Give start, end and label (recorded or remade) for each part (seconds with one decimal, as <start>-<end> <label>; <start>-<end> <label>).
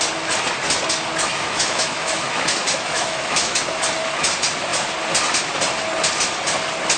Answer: 0.0-1.3 recorded; 1.3-3.6 remade; 3.6-7.0 recorded